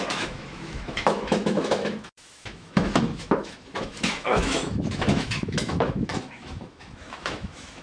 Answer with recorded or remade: remade